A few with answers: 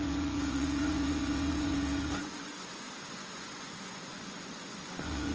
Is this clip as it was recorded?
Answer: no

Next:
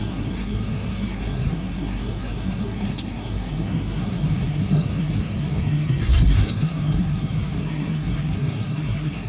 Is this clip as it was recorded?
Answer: no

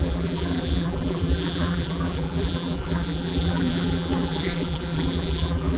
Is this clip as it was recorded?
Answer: no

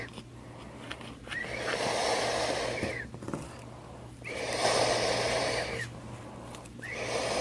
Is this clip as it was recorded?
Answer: no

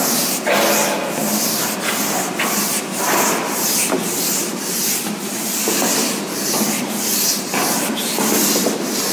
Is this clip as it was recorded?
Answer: yes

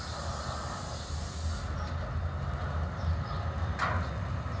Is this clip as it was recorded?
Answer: yes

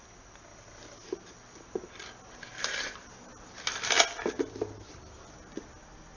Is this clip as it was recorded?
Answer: yes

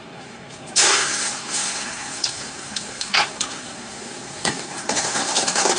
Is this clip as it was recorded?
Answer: no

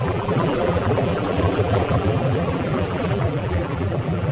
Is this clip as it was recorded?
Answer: no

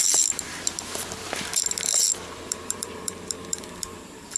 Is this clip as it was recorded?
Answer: no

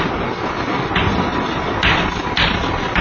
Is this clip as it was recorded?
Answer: yes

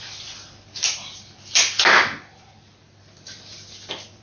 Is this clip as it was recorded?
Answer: yes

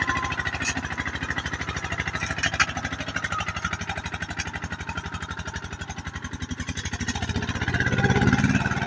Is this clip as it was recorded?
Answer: yes